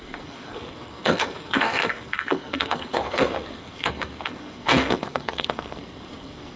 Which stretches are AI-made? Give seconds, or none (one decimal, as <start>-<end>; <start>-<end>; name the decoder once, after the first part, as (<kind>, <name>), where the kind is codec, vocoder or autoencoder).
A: 0.0-6.6 (codec, SNAC)

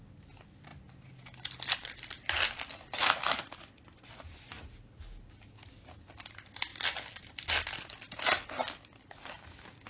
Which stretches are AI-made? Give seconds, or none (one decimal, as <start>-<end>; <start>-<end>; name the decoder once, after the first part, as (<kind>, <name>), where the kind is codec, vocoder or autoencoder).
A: none